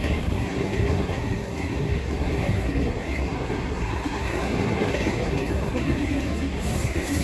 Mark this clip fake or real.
fake